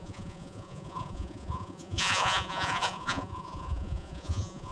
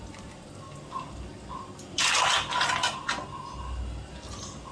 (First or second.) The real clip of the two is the second